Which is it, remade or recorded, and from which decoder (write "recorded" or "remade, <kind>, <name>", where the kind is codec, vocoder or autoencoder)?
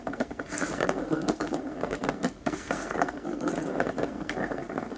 remade, codec, SNAC